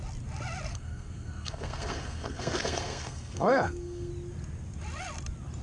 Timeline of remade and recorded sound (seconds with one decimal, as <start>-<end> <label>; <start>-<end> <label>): 0.0-0.7 recorded; 0.7-4.1 remade; 4.1-5.6 recorded